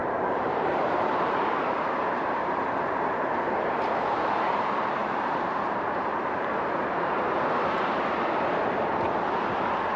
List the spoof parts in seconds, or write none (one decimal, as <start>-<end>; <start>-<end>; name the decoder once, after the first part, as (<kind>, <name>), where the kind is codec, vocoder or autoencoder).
0.0-4.5 (vocoder, BigVGAN v2); 5.0-7.5